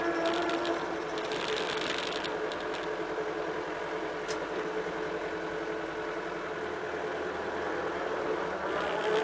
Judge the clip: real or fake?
real